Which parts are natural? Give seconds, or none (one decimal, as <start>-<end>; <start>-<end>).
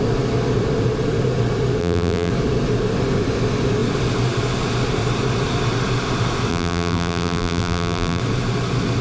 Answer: 0.0-1.8; 2.3-6.5; 8.2-9.0